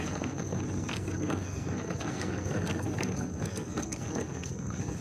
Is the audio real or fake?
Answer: fake